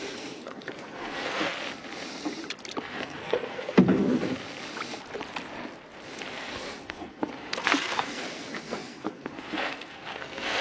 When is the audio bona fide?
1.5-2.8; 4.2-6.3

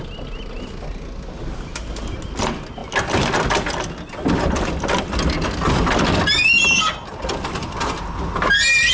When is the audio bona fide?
0.0-8.9

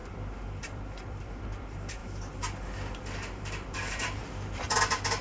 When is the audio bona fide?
none

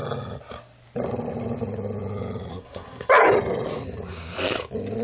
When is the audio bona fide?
0.0-2.5; 3.1-5.0

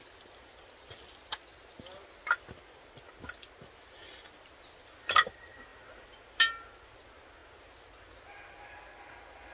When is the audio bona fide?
0.0-9.5

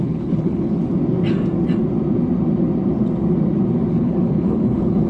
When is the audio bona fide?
0.8-3.9

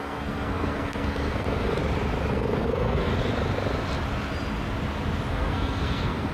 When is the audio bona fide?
1.8-2.3; 3.1-5.3